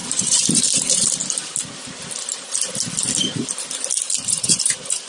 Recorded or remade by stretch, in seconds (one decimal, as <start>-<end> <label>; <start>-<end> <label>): 0.0-1.2 remade; 1.2-4.3 recorded; 4.3-5.1 remade